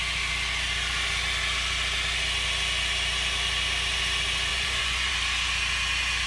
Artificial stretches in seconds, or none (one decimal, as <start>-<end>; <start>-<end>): 4.5-5.1